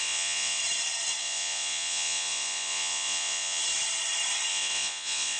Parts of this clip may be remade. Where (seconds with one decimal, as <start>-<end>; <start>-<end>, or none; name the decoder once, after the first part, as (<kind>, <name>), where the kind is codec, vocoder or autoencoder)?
0.0-0.6 (vocoder, Vocos); 1.2-3.6; 4.5-5.4